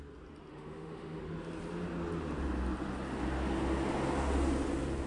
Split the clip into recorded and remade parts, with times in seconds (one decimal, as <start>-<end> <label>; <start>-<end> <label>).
0.0-0.5 recorded; 0.5-1.2 remade; 1.2-5.1 recorded